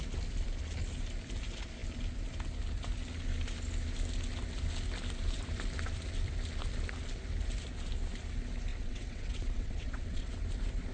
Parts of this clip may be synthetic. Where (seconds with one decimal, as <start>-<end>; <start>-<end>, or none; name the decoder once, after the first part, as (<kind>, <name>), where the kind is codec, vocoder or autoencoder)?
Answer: 8.7-10.4 (vocoder, WaveNeXt)